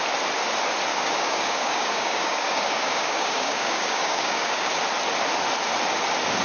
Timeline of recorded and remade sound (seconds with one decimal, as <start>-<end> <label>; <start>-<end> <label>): 0.0-0.9 recorded; 0.9-4.7 remade; 4.7-6.4 recorded